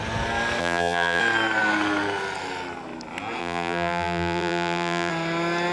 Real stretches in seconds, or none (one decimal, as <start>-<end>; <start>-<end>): 0.0-0.6; 1.2-3.4; 5.1-5.7